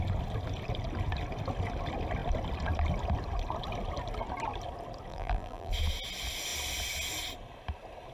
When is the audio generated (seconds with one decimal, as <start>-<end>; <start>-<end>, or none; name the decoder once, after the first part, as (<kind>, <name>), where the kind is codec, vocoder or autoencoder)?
5.1-5.7 (vocoder, BigVGAN v2)